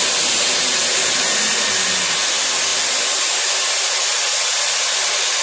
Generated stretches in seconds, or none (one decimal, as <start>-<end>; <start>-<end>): none